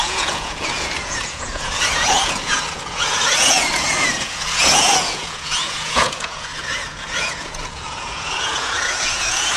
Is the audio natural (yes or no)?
no